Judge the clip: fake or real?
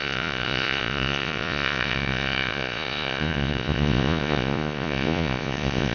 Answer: fake